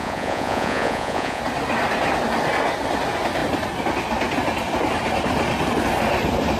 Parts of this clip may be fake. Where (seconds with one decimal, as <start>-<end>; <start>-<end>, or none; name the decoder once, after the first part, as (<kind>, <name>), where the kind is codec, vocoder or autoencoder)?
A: 0.0-1.4 (vocoder, Vocos)